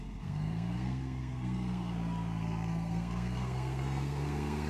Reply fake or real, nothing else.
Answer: fake